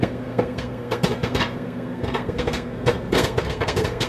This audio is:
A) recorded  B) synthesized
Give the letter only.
B